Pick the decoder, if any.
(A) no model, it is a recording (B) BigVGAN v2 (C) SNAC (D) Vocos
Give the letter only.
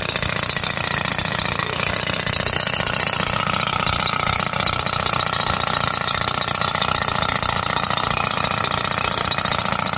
A